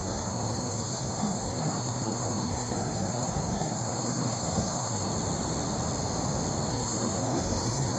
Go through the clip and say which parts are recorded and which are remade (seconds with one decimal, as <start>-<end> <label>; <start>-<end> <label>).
0.0-5.1 remade; 5.1-6.7 recorded; 6.7-8.0 remade